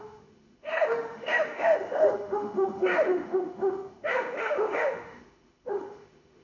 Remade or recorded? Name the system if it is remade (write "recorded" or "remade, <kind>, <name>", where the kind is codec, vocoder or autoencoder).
remade, autoencoder, DAC-VAE